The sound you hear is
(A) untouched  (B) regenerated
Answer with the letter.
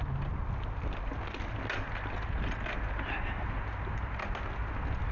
A